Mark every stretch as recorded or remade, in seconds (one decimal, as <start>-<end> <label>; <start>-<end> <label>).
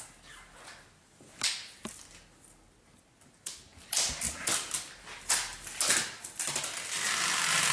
0.0-7.7 recorded